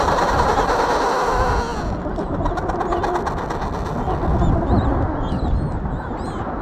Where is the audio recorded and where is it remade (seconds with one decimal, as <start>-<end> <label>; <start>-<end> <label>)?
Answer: 0.0-6.6 recorded